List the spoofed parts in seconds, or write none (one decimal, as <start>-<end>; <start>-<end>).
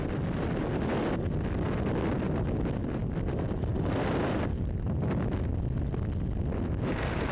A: none